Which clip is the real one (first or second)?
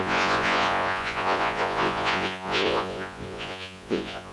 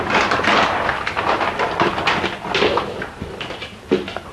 second